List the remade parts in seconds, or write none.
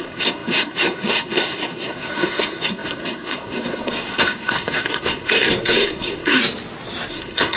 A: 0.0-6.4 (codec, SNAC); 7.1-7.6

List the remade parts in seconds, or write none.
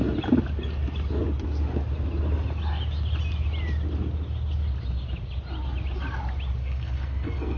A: 6.6-7.6 (codec, SNAC)